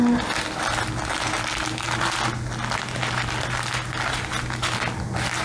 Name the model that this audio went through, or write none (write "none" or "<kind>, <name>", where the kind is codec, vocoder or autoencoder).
none